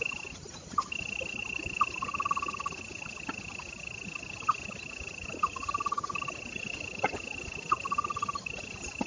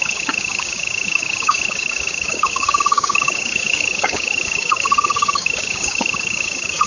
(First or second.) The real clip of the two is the first